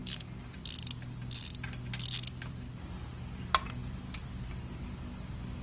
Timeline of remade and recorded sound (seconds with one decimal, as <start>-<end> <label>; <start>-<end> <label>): 0.0-5.6 recorded